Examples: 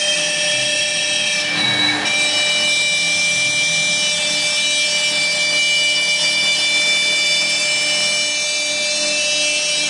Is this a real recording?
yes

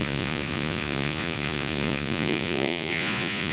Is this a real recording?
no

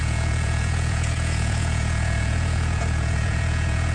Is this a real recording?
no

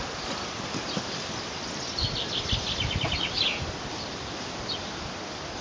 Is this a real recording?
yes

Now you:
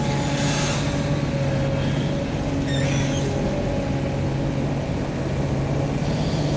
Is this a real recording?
yes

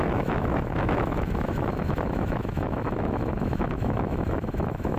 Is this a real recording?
no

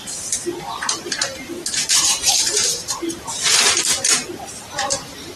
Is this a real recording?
no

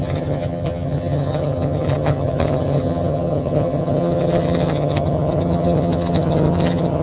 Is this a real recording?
no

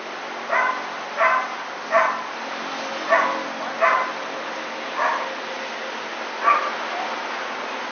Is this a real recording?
yes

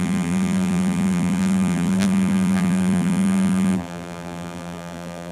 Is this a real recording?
no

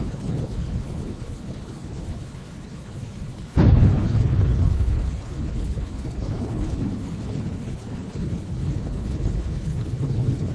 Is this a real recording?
no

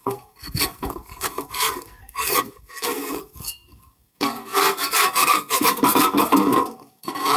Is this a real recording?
no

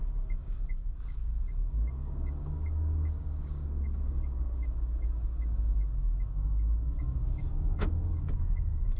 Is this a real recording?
no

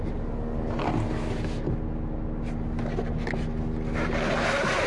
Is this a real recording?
yes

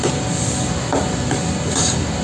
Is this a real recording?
yes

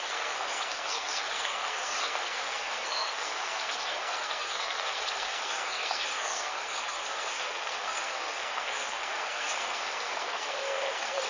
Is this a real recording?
no